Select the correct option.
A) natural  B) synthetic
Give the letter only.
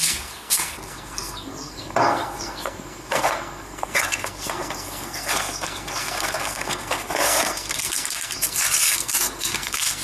B